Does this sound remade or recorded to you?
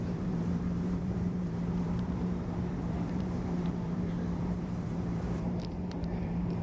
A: remade